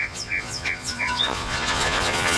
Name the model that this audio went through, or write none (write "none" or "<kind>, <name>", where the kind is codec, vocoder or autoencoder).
vocoder, Vocos